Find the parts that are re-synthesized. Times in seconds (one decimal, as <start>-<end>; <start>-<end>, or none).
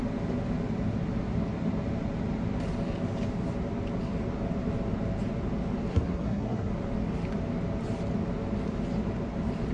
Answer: 5.9-6.7